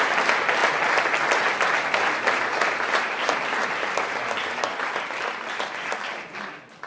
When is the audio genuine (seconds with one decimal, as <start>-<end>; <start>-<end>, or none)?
0.0-6.9